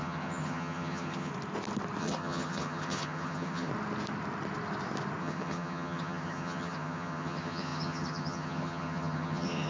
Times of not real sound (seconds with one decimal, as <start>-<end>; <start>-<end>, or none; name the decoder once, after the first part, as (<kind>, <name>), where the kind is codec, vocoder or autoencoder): 0.0-1.3 (vocoder, HiFi-GAN); 2.0-3.7; 5.2-9.7